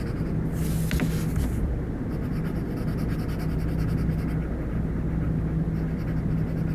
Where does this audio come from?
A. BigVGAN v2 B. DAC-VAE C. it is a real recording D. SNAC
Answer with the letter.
C